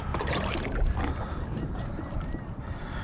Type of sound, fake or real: real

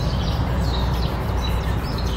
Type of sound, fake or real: fake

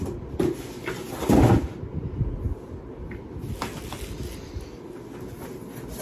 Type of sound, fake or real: real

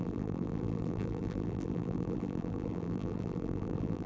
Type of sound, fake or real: fake